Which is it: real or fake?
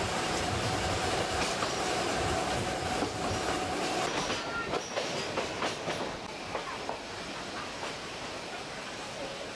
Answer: real